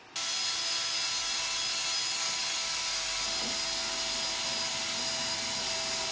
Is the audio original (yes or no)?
yes